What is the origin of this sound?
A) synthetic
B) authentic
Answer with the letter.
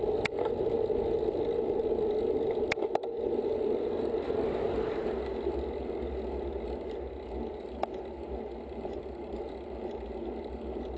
B